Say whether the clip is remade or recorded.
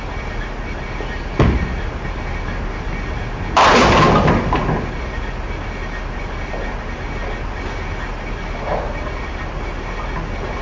recorded